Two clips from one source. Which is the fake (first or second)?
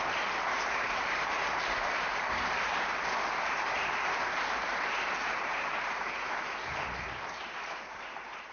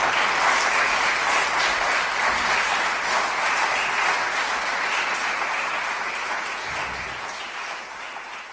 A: first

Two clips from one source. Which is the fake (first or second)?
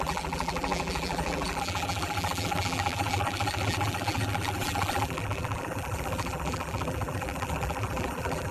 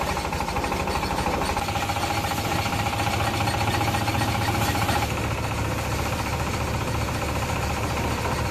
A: first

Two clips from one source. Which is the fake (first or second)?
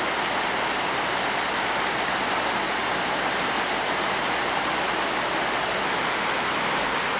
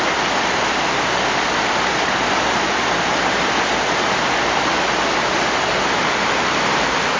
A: second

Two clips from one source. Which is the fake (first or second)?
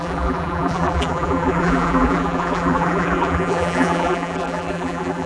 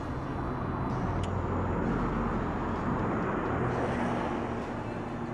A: first